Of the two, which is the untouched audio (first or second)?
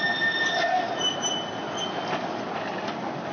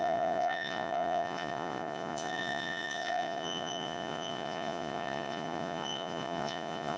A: first